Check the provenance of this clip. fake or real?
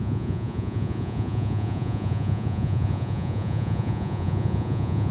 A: fake